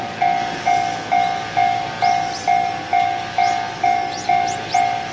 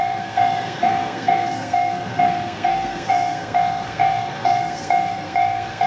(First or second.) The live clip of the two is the first